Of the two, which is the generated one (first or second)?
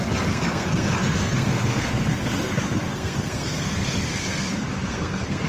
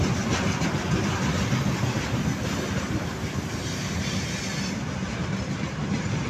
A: first